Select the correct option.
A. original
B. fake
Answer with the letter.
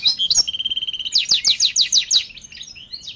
A